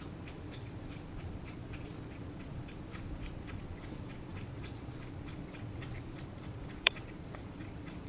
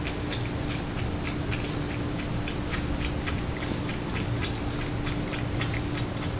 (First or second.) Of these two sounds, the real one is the second